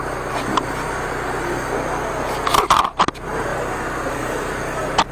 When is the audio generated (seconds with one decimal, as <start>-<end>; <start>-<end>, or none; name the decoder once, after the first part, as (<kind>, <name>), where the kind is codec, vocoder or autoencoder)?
none